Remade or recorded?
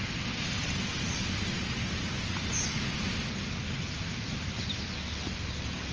recorded